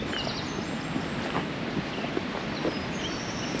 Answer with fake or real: real